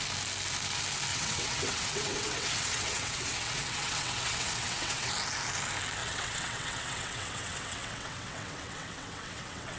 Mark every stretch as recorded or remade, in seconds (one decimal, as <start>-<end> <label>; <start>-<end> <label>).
0.0-1.1 recorded; 1.1-5.1 remade; 5.1-6.0 recorded; 6.0-9.8 remade